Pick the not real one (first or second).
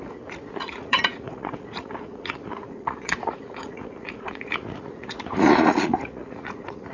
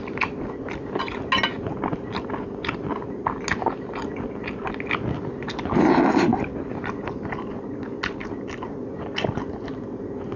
first